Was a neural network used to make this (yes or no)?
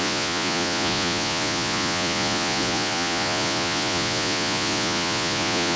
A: yes